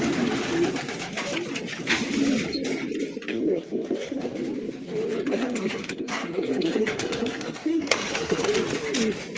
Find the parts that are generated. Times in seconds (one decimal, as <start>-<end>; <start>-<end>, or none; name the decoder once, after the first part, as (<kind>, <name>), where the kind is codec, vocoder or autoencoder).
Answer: 3.3-4.3 (codec, SNAC); 5.3-8.5